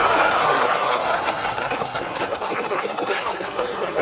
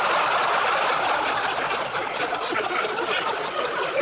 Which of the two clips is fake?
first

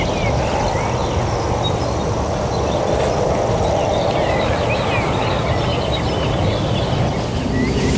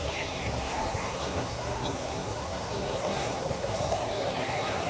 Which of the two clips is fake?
second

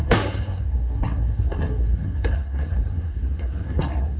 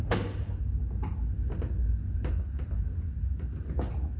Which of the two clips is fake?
first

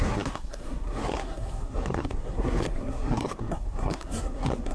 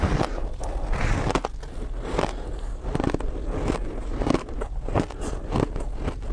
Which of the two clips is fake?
first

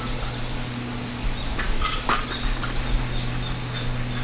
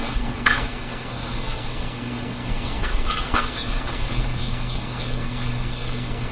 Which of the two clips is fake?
second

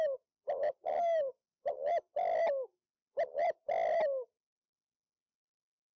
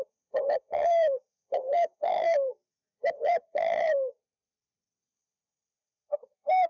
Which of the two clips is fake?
second